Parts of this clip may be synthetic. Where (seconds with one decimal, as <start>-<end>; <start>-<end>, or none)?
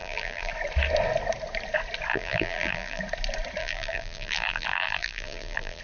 0.0-0.5; 2.1-3.0; 3.6-5.8